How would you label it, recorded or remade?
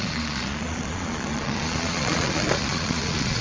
remade